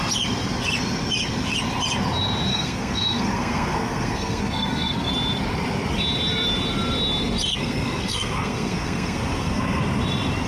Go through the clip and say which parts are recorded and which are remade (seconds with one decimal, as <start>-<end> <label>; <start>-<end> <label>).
0.0-2.5 recorded; 2.5-5.1 remade; 5.1-7.5 recorded; 7.5-9.8 remade; 9.8-10.5 recorded